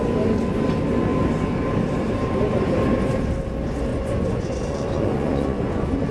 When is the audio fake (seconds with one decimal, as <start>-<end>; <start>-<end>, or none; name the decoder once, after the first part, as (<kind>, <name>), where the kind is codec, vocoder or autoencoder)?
3.9-6.1 (vocoder, Vocos)